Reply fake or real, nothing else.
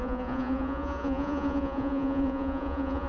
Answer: fake